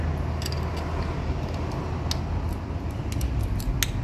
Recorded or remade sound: recorded